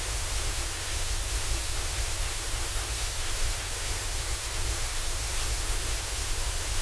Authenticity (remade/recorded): remade